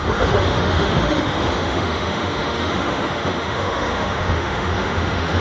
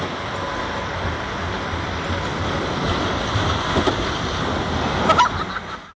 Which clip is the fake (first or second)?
first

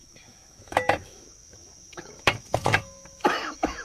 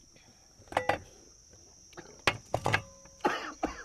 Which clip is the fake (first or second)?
first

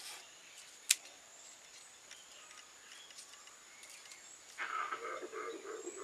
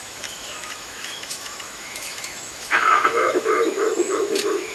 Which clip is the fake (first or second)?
second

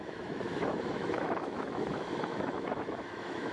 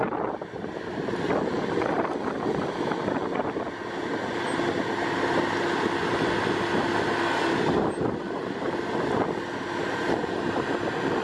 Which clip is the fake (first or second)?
first